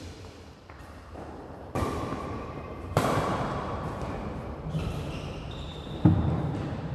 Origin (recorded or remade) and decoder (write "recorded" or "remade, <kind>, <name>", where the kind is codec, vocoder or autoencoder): remade, vocoder, BigVGAN v2